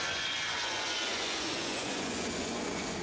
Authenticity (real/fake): fake